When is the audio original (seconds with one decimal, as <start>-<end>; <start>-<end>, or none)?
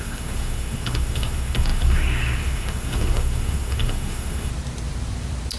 4.5-5.6